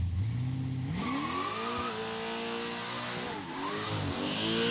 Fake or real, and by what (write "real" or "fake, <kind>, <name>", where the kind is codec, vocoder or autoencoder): real